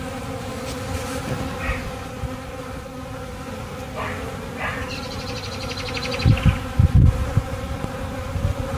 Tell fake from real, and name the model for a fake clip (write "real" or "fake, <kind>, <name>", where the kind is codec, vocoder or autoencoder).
real